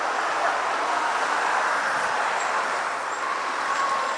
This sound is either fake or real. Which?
real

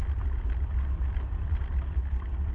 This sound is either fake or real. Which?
real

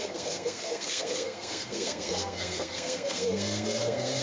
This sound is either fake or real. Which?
fake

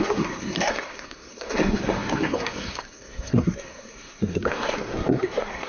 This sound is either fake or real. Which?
fake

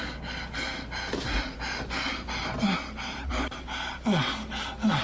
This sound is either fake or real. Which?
real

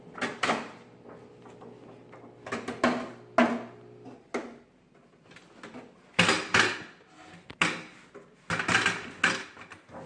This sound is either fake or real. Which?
real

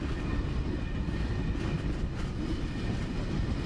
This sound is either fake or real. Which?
real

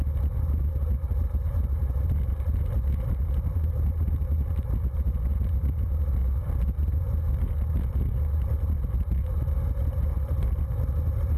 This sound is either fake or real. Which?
real